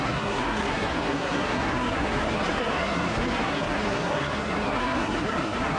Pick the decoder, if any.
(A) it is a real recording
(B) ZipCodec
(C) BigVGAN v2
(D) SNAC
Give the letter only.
D